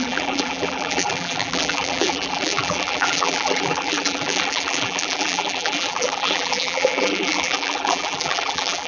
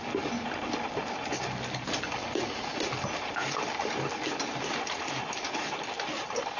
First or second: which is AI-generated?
first